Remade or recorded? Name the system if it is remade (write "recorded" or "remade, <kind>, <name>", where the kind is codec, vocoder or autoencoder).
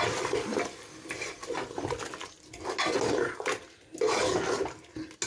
recorded